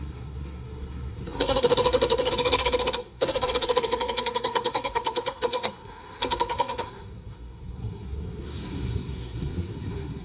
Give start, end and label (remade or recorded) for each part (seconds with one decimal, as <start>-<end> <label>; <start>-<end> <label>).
0.0-10.2 remade